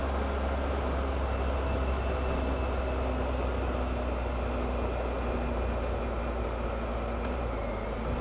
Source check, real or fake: real